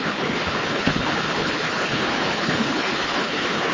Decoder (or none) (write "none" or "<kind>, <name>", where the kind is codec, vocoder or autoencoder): codec, HILCodec